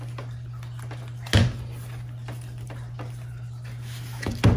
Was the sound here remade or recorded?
recorded